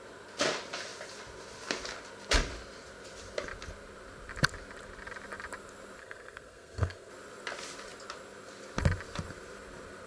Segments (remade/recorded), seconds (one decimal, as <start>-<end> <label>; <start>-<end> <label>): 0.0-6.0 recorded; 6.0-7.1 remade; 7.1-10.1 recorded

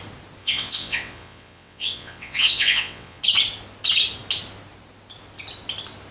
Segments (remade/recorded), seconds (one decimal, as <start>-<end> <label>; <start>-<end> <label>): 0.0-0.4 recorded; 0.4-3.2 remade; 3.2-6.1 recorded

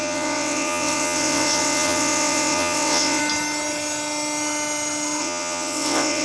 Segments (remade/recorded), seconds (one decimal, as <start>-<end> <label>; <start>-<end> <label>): 0.0-3.2 remade; 3.2-5.2 recorded; 5.2-6.2 remade

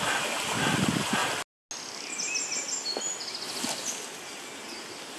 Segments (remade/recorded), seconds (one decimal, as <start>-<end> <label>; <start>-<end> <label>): 0.0-5.2 recorded

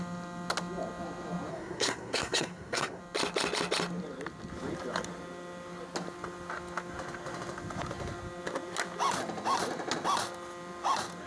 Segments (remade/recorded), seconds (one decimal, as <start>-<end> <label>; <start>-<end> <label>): 0.0-1.5 recorded; 1.5-3.0 remade; 3.0-11.3 recorded

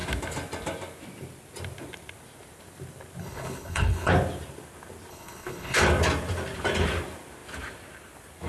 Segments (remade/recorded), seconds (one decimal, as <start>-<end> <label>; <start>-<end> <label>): 0.0-3.2 recorded; 3.2-4.1 remade; 4.1-5.1 recorded; 5.1-5.8 remade; 5.8-8.5 recorded

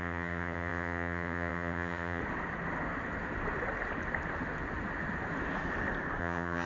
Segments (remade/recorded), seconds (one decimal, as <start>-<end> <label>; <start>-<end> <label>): 0.0-2.2 remade; 2.2-6.2 recorded; 6.2-6.7 remade

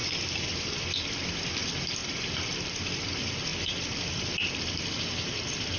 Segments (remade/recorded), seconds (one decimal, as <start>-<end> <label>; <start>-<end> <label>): 0.0-0.8 remade; 0.8-2.0 recorded; 2.0-3.0 remade; 3.0-3.5 recorded; 3.5-4.2 remade; 4.2-5.8 recorded